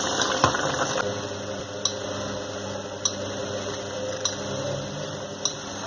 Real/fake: real